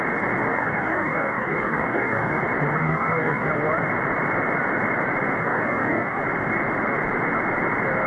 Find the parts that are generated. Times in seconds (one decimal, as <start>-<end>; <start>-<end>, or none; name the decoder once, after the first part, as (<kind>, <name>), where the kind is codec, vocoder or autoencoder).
0.5-2.4 (codec, DAC); 2.8-3.5; 5.4-6.2